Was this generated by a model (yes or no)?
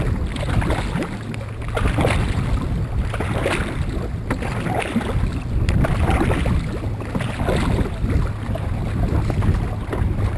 no